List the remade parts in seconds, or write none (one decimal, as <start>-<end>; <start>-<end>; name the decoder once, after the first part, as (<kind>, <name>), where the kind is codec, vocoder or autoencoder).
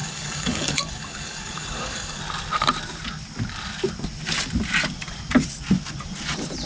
0.0-2.2 (codec, DAC)